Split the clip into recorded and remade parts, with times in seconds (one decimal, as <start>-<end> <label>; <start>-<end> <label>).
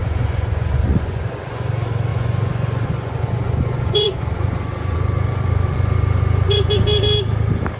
0.0-1.7 remade; 1.7-2.1 recorded; 2.1-6.7 remade; 6.7-7.8 recorded